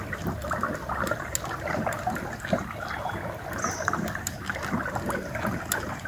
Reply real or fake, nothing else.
real